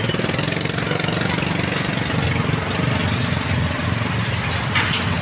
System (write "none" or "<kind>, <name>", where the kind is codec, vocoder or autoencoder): none